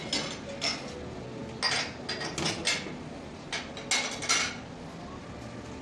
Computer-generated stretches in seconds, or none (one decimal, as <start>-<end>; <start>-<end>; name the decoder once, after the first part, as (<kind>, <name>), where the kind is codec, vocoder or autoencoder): none